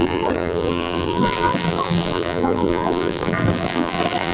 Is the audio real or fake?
fake